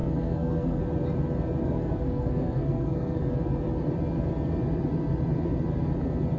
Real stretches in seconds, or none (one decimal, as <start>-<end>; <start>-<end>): 0.8-1.6; 3.2-6.4